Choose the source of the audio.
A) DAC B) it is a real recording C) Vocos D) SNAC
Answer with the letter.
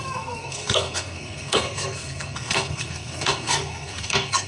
D